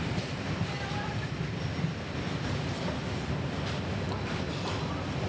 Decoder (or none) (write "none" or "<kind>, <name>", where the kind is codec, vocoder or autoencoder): none